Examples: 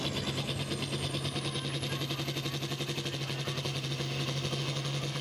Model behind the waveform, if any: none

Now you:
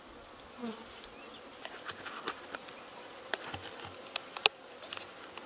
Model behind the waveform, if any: none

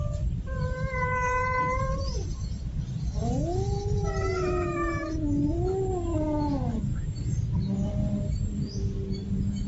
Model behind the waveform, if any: none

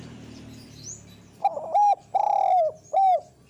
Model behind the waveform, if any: none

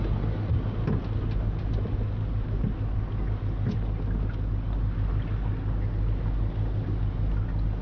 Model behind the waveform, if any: none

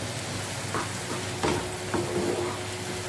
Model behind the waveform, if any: none